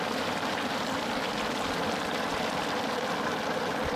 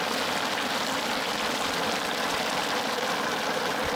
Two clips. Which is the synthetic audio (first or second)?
first